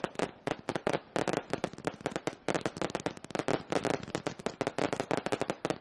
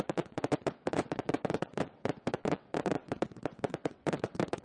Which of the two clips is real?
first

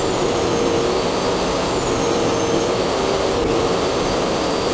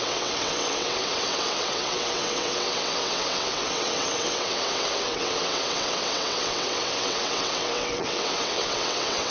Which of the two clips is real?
first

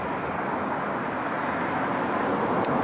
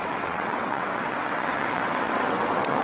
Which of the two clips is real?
first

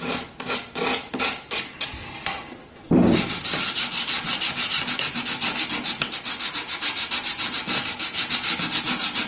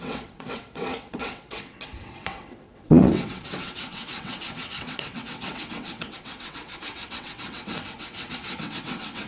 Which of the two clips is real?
first